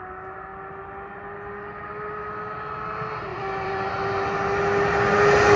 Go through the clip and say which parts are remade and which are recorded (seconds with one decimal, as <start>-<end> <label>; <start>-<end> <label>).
0.0-3.3 recorded; 3.3-3.9 remade; 3.9-5.6 recorded